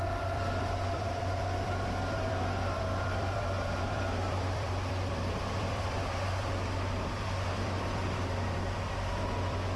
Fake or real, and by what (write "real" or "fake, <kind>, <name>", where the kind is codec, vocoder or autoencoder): fake, vocoder, BigVGAN v2